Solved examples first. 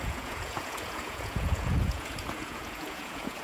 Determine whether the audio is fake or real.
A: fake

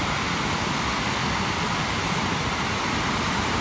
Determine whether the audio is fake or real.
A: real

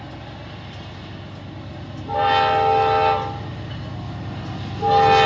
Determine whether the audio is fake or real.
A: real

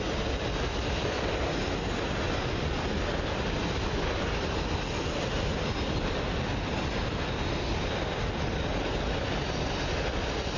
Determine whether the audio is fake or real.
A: real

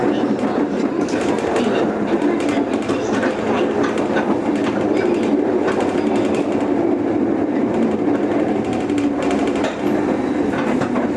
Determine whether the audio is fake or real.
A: real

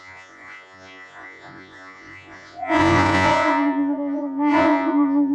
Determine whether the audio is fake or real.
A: fake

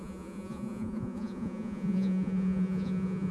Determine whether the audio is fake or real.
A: fake